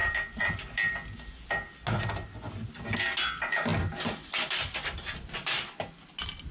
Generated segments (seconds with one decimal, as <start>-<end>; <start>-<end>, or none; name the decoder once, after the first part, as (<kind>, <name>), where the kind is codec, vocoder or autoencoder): 3.7-5.7 (vocoder, BigVGAN v2)